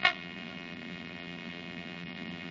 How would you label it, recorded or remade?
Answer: remade